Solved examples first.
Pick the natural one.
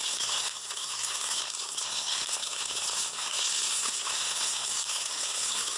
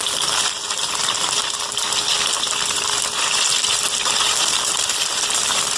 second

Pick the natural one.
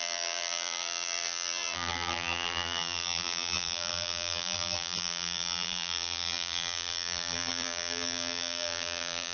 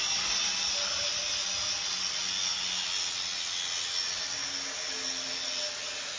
second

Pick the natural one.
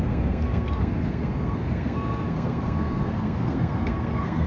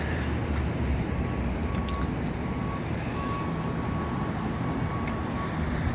second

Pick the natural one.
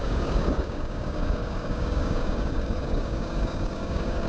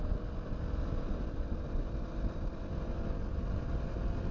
second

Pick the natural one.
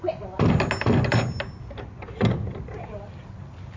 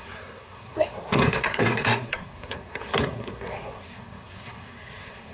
first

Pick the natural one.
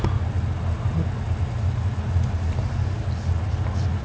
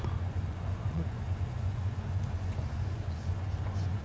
first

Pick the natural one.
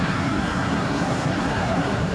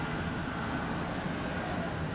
second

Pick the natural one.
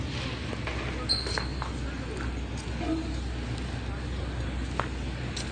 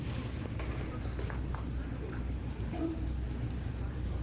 first